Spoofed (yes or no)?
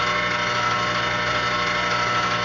no